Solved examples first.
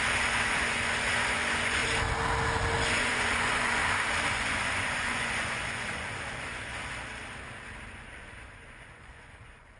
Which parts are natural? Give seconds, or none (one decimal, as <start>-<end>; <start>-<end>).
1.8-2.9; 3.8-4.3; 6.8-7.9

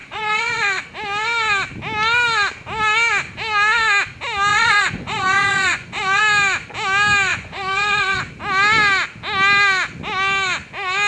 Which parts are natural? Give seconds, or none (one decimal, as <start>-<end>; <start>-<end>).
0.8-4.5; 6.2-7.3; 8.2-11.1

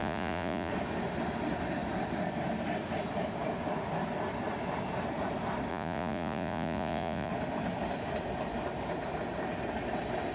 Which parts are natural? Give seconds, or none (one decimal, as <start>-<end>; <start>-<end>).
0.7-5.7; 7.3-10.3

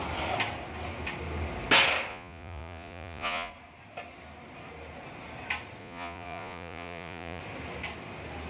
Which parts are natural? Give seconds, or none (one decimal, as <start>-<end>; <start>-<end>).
0.0-2.1; 3.5-5.8; 7.4-8.5

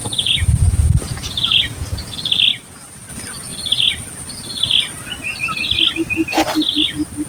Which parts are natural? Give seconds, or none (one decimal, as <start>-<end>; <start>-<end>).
2.1-7.3

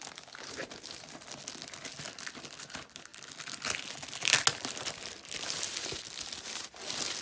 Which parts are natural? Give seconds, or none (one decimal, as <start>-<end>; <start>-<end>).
0.0-7.2